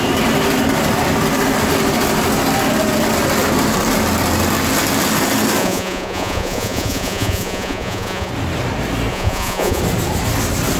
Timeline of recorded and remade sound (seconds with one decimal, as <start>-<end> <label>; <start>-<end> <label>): 0.0-5.6 recorded; 5.6-8.3 remade; 8.3-9.1 recorded; 9.1-9.8 remade; 9.8-10.8 recorded